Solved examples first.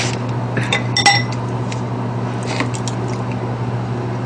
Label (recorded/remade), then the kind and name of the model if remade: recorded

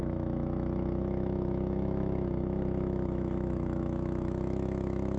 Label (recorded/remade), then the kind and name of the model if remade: remade, autoencoder, DAC-VAE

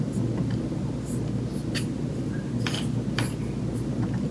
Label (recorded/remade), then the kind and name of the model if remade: recorded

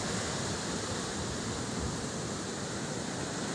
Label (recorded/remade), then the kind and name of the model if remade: recorded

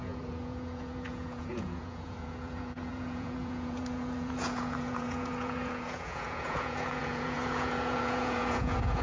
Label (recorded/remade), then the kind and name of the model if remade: remade, vocoder, Vocos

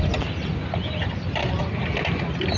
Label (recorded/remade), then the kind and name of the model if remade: recorded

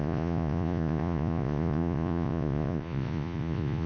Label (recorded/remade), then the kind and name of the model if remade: remade, vocoder, Vocos